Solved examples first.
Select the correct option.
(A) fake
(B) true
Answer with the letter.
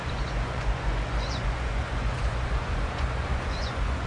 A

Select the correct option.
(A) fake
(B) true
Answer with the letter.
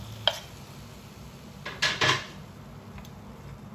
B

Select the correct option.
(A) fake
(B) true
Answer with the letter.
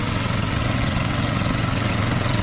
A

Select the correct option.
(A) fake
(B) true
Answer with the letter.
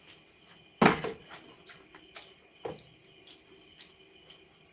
B